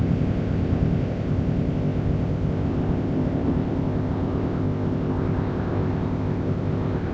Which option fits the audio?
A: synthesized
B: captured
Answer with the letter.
A